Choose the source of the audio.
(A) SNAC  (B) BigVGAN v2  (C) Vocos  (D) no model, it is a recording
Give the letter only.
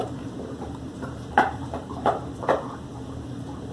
B